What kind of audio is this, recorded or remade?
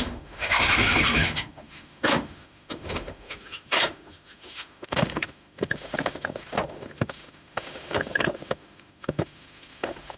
remade